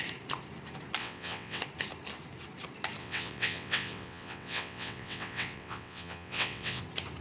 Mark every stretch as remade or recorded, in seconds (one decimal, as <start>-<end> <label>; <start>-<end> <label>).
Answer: 0.0-1.0 recorded; 1.0-1.6 remade; 1.6-3.0 recorded; 3.0-6.8 remade; 6.8-7.2 recorded